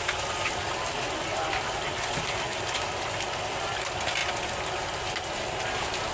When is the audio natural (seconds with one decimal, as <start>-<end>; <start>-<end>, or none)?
0.0-6.1